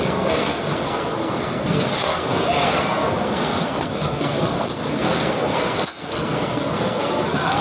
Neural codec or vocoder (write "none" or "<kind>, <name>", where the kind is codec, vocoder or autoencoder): codec, SNAC